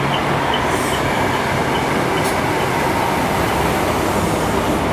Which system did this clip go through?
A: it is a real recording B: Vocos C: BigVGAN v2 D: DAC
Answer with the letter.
A